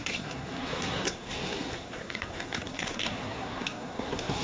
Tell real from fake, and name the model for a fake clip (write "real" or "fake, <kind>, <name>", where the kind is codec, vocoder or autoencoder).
fake, codec, SNAC